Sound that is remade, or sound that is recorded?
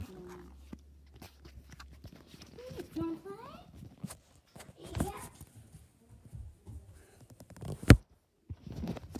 recorded